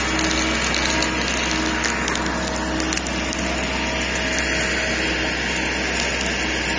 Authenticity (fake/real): real